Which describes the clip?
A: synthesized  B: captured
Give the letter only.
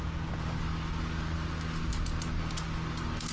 B